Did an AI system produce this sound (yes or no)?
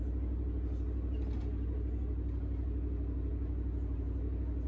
no